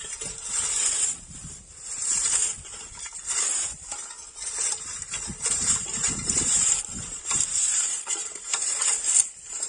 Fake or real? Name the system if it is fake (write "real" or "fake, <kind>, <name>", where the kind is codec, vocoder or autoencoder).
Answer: fake, vocoder, BigVGAN v2